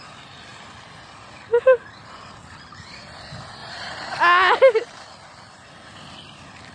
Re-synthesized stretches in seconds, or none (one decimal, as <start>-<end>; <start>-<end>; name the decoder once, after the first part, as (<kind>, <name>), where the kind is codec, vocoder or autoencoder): 3.6-4.2 (vocoder, BigVGAN v2)